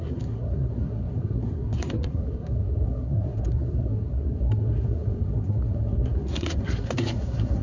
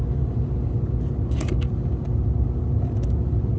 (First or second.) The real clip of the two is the second